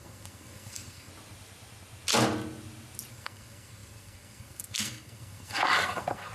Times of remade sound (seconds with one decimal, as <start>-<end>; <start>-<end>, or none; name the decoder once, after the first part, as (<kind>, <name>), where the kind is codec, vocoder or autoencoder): 0.0-1.1 (codec, SNAC); 3.1-6.3